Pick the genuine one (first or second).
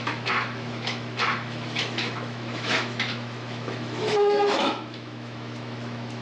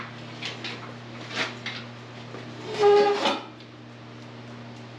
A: second